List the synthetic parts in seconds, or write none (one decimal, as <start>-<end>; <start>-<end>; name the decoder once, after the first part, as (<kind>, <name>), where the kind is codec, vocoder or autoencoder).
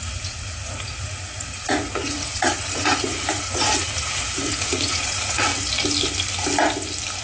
0.0-5.5 (vocoder, Vocos)